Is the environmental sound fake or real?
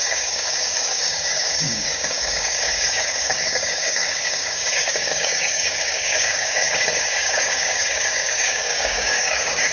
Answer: fake